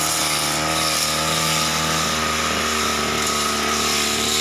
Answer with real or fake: real